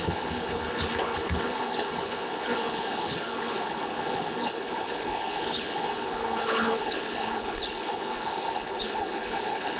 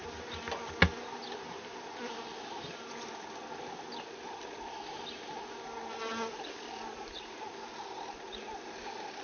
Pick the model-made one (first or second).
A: first